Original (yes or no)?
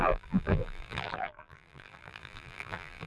no